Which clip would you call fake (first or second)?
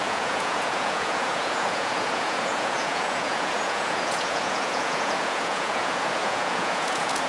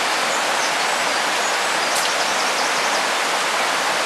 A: first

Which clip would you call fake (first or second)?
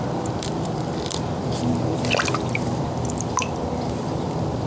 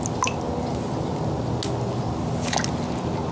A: first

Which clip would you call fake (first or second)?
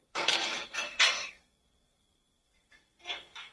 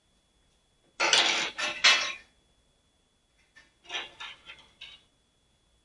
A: first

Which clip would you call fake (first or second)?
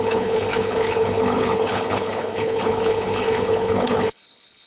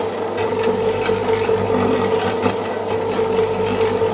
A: first